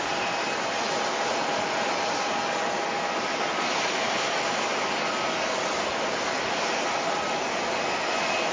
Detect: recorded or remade recorded